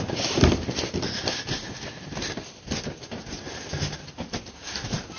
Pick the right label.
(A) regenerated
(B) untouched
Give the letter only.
B